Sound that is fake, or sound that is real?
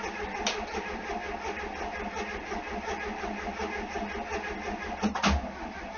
real